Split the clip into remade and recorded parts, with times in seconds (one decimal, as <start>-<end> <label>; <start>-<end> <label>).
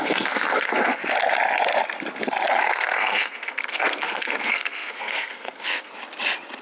0.0-1.0 remade; 1.0-2.6 recorded; 2.6-5.9 remade; 5.9-6.6 recorded